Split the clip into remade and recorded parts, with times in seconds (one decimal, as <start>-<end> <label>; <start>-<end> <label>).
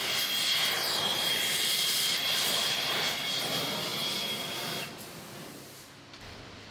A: 0.0-1.1 recorded; 1.1-3.0 remade; 3.0-6.7 recorded